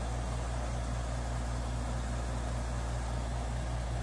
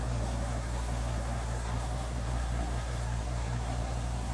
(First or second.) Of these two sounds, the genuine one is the first